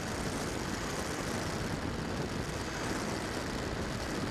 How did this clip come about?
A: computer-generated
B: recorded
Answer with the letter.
B